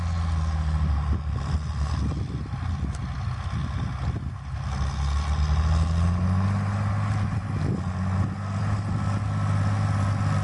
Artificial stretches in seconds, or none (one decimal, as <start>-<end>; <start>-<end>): none